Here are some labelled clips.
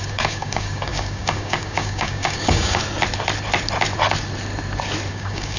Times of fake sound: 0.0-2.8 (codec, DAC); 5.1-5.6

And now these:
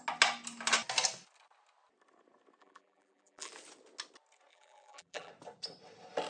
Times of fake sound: 2.6-3.5 (vocoder, BigVGAN v2); 4.5-5.3

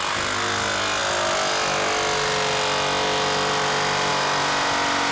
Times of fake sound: none

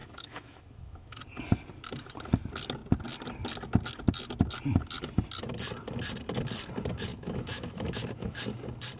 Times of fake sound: 0.0-1.2 (autoencoder, DAC-VAE); 7.1-8.4

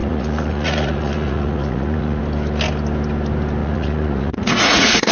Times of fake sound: 0.0-2.2 (vocoder, Vocos); 3.6-5.1

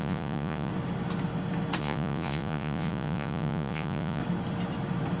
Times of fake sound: 0.0-0.7 (vocoder, Vocos); 1.8-4.2

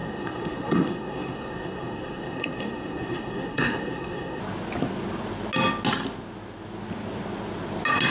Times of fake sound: 0.0-4.4 (codec, SNAC)